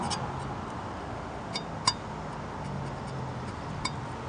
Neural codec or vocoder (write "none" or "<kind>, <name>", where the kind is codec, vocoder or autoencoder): none